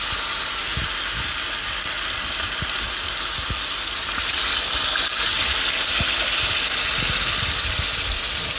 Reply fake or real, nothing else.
real